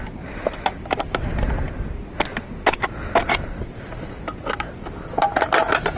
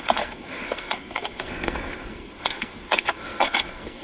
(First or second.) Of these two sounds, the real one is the first